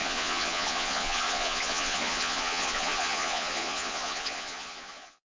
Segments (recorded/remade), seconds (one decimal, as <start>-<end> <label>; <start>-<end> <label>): 0.0-5.3 remade